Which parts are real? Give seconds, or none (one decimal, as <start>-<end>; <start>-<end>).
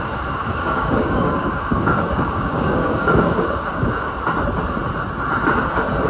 0.0-0.4; 4.1-6.1